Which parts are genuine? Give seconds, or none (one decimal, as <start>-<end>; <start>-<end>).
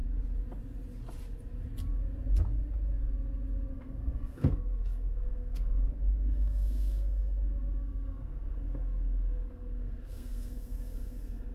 0.0-3.7